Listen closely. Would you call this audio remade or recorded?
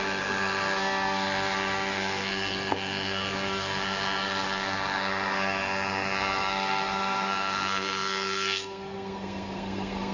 remade